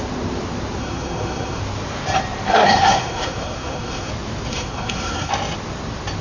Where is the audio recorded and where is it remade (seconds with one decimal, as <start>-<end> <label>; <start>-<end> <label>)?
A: 0.0-0.8 recorded; 0.8-1.6 remade; 1.6-2.5 recorded; 2.5-4.1 remade; 4.1-4.5 recorded; 4.5-5.3 remade; 5.3-6.2 recorded